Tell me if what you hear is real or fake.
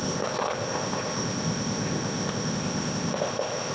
fake